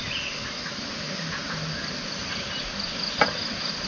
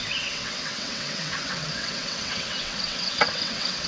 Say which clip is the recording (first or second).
first